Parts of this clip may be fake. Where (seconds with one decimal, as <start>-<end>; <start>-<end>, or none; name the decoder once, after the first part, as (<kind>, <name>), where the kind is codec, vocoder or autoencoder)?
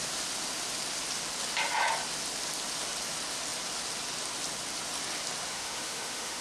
5.5-6.4 (autoencoder, DAC-VAE)